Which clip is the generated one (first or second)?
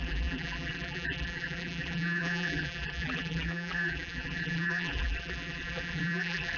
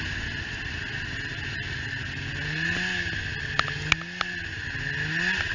first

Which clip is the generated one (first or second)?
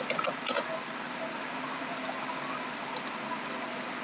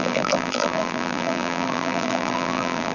second